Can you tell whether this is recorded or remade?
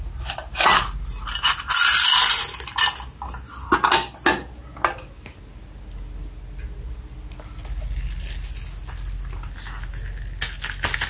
recorded